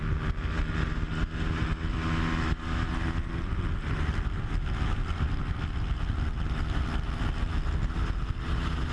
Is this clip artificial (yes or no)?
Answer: no